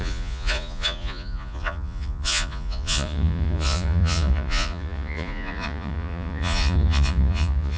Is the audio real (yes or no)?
no